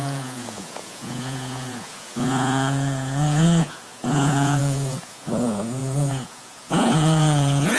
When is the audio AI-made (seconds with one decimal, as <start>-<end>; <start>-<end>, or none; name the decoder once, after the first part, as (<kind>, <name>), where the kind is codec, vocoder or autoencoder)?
0.0-7.8 (vocoder, Vocos)